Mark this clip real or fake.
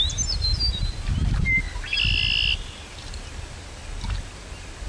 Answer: real